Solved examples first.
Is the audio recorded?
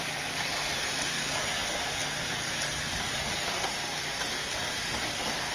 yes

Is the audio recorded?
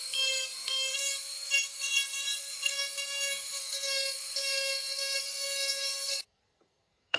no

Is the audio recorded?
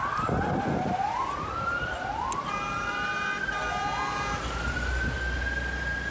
yes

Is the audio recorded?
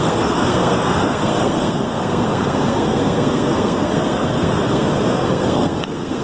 no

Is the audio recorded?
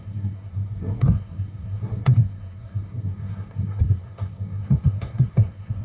no